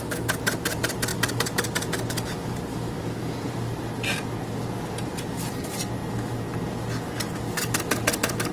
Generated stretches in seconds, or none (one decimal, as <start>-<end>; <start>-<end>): none